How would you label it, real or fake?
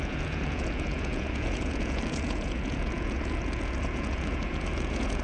fake